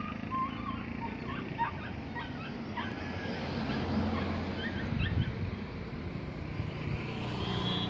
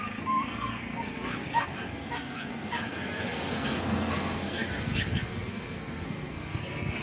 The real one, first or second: first